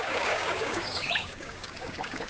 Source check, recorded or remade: remade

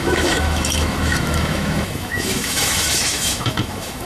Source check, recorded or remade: remade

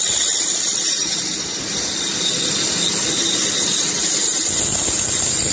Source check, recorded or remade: recorded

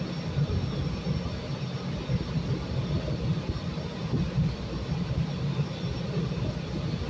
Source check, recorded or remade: recorded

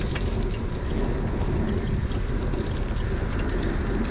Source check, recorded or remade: recorded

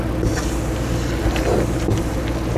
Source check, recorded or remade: recorded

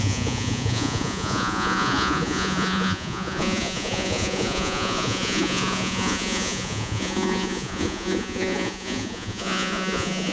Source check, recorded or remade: remade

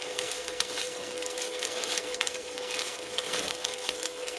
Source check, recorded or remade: remade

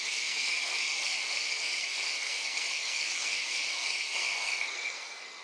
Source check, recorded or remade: remade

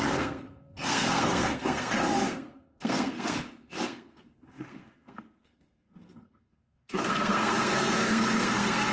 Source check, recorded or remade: remade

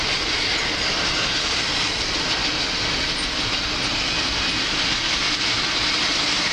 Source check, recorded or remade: recorded